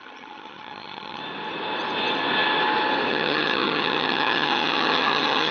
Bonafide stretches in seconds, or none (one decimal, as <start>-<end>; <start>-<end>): 1.2-3.1